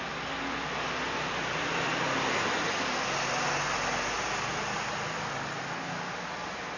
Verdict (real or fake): real